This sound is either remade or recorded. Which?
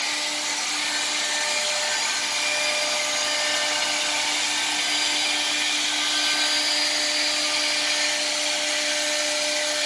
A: recorded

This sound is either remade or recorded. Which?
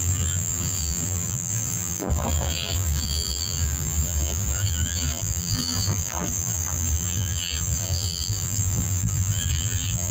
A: remade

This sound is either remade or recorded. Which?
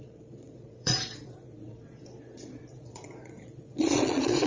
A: remade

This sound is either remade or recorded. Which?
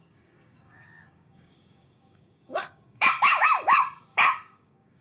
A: remade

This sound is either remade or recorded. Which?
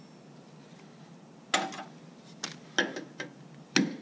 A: recorded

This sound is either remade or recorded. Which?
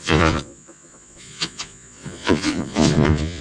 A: remade